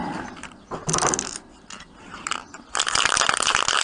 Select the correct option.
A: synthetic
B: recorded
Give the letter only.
B